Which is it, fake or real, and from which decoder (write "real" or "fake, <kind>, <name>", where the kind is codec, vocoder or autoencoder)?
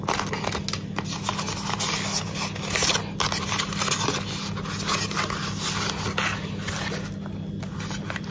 real